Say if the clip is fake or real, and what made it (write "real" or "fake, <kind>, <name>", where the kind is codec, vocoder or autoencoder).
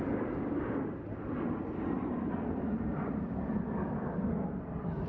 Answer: fake, vocoder, BigVGAN v2